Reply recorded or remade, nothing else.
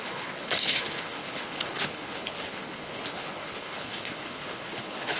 remade